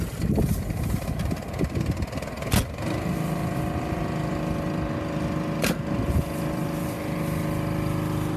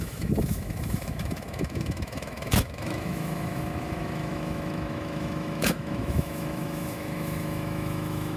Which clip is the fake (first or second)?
second